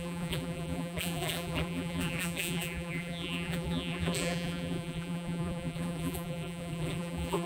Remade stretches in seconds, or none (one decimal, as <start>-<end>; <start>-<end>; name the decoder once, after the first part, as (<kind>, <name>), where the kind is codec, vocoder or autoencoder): 0.0-7.5 (vocoder, BigVGAN v2)